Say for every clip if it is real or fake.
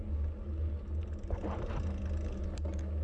real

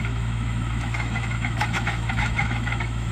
fake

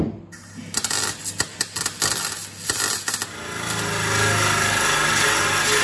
real